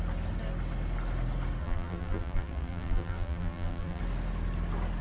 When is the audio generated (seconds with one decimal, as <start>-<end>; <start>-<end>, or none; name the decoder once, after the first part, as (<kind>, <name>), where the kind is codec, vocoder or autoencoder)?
1.6-4.0 (vocoder, BigVGAN v2)